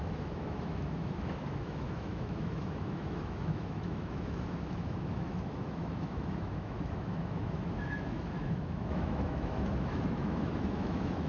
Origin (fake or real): fake